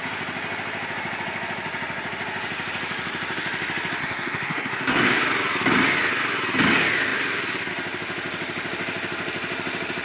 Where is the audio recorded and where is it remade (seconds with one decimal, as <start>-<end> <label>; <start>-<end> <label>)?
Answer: 0.0-4.0 recorded; 4.0-5.2 remade; 5.2-10.0 recorded